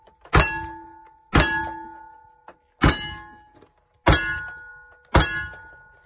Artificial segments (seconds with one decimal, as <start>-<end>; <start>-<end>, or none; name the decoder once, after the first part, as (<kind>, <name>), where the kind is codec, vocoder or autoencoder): none

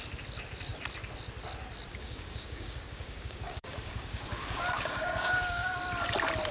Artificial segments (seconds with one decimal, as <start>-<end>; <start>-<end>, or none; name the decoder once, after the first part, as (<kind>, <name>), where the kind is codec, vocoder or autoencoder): 1.9-5.8 (codec, DAC)

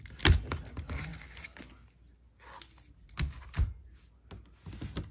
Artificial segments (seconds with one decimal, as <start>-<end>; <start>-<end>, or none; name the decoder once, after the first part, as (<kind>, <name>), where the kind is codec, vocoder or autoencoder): none